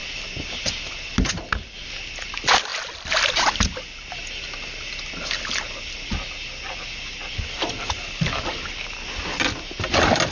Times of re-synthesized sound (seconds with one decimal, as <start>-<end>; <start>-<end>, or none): none